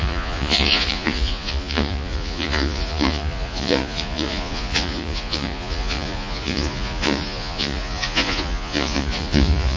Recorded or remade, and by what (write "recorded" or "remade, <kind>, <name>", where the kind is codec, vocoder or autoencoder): remade, vocoder, Vocos